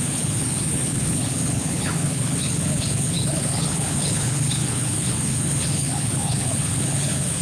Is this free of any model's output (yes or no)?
no